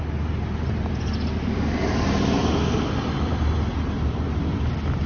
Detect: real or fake fake